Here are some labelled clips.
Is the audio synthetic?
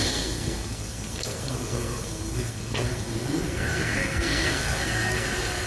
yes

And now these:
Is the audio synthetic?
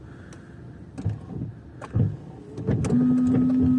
no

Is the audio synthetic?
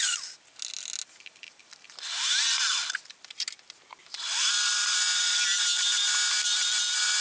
no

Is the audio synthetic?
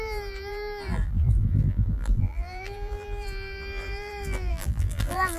yes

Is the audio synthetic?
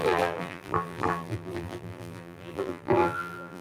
yes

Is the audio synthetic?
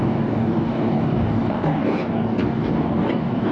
yes